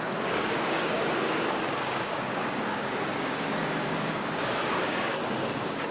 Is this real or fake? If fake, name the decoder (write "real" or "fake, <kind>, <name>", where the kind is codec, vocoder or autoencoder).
fake, codec, DAC